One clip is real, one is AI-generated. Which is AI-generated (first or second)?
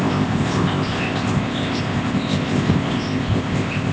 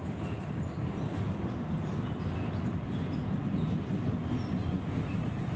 first